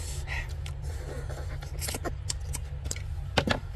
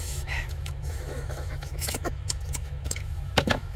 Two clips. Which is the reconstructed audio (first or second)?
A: second